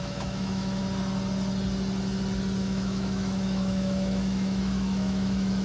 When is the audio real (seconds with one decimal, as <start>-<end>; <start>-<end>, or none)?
0.8-2.6